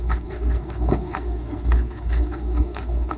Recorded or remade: remade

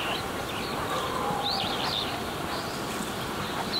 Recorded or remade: recorded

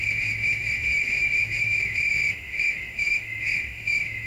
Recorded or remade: remade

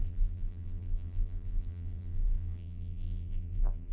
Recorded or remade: remade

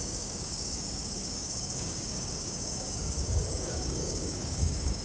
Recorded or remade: remade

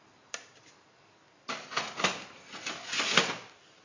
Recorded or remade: recorded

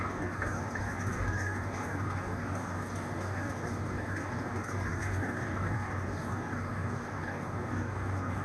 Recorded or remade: remade